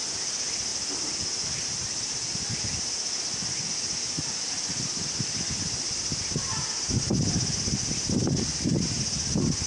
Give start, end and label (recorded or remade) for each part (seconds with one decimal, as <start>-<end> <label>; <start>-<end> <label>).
0.0-9.7 recorded